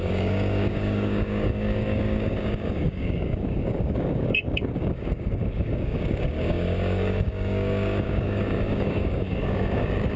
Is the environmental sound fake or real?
fake